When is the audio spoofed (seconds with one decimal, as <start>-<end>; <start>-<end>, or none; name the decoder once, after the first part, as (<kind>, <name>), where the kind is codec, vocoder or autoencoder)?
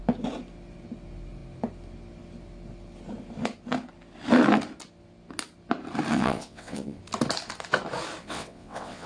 6.1-7.0 (vocoder, WaveNeXt); 8.2-9.1